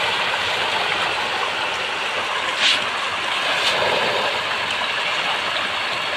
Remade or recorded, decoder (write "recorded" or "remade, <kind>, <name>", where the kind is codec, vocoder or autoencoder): recorded